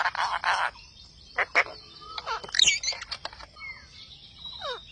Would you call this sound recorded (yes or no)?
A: yes